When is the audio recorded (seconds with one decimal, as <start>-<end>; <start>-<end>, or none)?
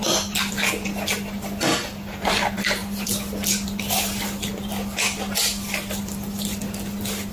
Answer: 0.0-1.8; 2.4-7.3